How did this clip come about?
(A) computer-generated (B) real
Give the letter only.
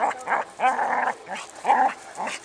B